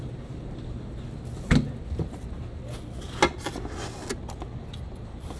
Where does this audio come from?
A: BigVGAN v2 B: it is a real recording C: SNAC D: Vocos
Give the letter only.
B